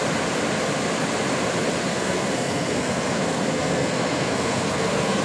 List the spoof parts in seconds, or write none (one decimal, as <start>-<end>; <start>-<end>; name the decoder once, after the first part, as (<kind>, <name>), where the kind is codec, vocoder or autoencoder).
1.9-5.2 (codec, SNAC)